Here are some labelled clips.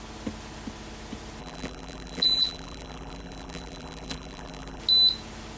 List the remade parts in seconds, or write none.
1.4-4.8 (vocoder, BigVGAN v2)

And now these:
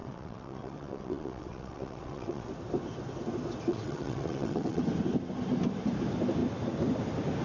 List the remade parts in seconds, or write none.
0.0-2.5 (vocoder, WaveNeXt); 3.7-4.8

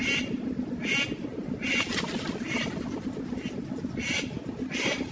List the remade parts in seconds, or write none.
none

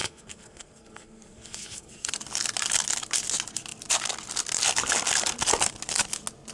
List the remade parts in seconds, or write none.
0.0-2.1 (codec, SNAC)